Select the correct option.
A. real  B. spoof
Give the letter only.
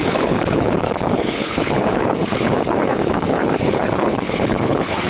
B